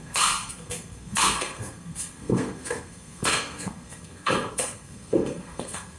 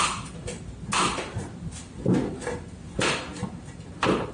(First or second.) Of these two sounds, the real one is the second